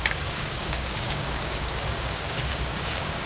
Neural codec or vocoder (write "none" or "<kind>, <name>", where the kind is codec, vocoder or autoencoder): codec, DAC